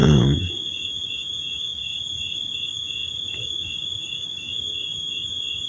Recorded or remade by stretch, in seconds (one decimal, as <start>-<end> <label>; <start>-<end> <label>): 0.0-1.8 remade; 1.8-2.5 recorded; 2.5-5.7 remade